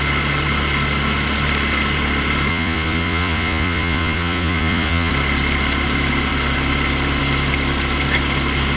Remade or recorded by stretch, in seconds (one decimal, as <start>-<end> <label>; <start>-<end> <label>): 0.0-2.5 recorded; 2.5-5.1 remade; 5.1-8.8 recorded